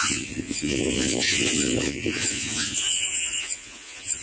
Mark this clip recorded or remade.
remade